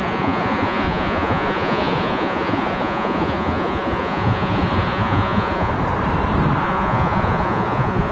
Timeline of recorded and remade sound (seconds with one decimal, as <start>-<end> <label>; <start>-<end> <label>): 0.0-5.7 remade; 5.7-6.6 recorded; 6.6-8.1 remade

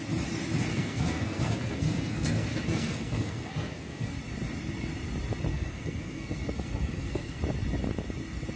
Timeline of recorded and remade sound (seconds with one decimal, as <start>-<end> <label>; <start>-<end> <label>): 0.0-0.7 recorded; 0.7-4.1 remade; 4.1-5.5 recorded; 5.5-7.4 remade; 7.4-8.6 recorded

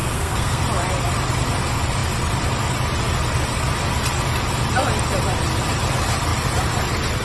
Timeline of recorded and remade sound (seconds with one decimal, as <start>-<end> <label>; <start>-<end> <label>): 0.0-0.6 remade; 0.6-7.2 recorded